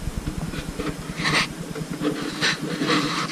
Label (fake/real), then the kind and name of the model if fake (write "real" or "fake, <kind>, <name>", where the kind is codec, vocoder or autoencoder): fake, vocoder, BigVGAN v2